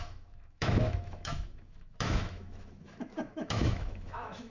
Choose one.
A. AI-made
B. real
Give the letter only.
A